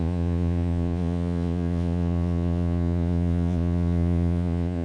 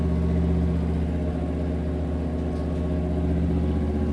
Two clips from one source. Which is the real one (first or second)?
second